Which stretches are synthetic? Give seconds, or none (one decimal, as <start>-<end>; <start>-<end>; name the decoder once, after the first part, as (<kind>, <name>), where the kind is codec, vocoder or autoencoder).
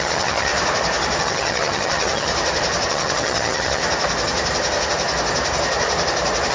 0.0-0.5 (vocoder, HiFi-GAN); 1.2-2.3; 2.9-3.8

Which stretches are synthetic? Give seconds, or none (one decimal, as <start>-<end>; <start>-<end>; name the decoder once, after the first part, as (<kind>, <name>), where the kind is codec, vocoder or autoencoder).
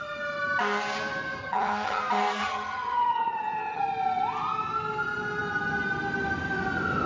1.4-2.0 (vocoder, HiFi-GAN); 2.4-3.8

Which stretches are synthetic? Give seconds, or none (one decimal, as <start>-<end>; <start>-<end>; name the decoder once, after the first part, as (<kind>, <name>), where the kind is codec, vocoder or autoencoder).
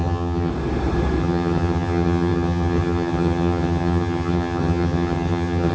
0.0-0.5 (vocoder, HiFi-GAN); 1.2-5.7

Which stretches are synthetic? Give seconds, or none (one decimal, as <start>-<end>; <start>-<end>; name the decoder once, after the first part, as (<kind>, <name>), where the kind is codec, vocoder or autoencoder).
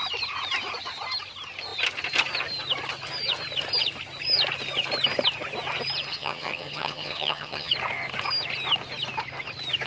6.1-7.7 (vocoder, HiFi-GAN)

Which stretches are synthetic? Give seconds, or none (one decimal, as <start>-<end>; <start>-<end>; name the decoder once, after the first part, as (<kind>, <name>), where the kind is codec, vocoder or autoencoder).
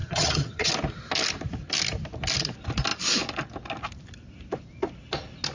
0.0-0.7 (vocoder, HiFi-GAN)